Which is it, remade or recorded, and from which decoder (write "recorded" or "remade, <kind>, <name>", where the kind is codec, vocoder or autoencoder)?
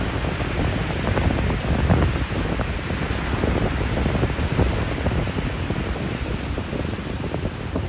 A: recorded